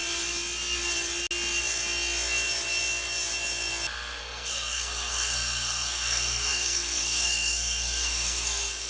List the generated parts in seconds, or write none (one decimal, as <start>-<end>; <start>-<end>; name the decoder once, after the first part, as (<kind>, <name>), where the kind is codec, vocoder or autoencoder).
4.2-8.9 (codec, SNAC)